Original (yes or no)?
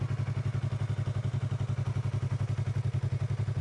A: yes